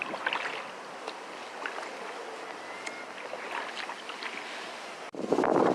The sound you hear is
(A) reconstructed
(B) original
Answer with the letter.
B